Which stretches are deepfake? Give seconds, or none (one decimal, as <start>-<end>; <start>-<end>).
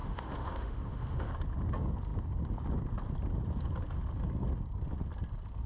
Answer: 0.0-1.3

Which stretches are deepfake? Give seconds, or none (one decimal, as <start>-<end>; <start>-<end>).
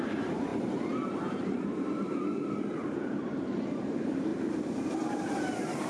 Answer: 0.0-5.9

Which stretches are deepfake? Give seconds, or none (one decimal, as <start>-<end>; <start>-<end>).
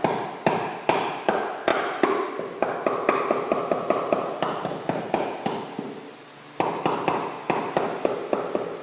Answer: none